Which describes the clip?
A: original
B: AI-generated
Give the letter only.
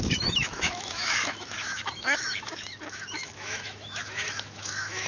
B